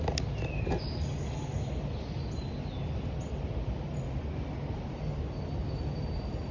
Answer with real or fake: real